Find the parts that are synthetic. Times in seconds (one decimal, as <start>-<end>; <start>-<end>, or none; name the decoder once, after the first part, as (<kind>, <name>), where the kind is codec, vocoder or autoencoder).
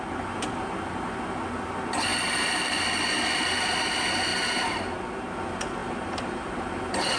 2.1-2.8 (vocoder, BigVGAN v2); 5.8-6.8